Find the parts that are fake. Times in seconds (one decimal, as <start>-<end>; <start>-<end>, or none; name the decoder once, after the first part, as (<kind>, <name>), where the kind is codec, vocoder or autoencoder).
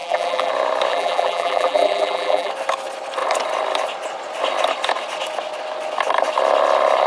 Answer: 0.0-0.5 (vocoder, BigVGAN v2); 0.9-2.5